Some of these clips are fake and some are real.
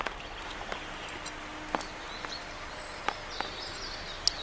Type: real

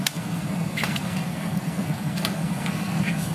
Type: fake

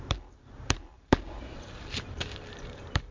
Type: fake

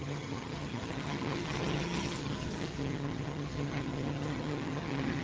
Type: fake